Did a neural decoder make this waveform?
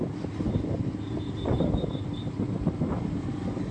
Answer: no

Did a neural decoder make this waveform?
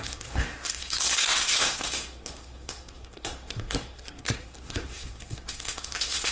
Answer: yes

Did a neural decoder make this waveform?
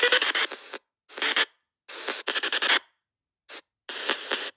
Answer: no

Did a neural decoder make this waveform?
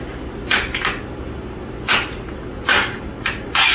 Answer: no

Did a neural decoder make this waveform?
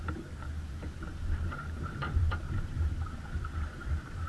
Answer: yes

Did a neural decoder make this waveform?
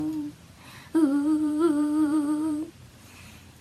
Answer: yes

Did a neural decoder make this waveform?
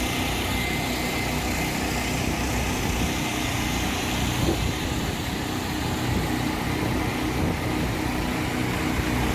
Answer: no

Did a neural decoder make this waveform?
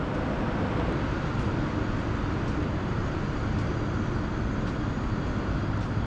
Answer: no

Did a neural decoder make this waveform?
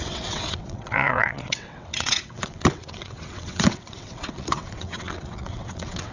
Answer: yes